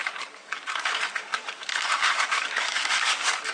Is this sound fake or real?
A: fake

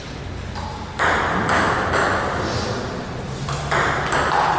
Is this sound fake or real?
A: real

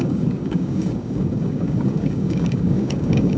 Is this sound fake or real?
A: fake